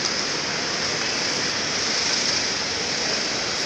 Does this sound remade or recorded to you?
recorded